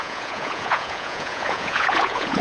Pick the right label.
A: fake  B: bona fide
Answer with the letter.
A